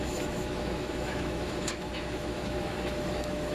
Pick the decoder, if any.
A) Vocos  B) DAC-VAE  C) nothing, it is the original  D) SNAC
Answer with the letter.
B